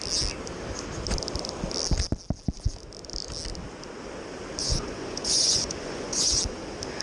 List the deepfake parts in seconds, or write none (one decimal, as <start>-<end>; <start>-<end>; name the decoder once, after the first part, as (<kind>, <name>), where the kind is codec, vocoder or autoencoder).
4.6-6.4 (vocoder, Vocos)